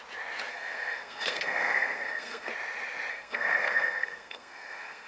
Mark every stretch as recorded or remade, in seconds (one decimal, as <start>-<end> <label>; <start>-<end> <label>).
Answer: 0.0-0.5 recorded; 0.5-2.5 remade; 2.5-3.1 recorded; 3.1-5.1 remade